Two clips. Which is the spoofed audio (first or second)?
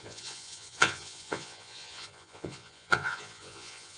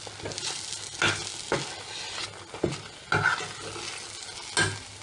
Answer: first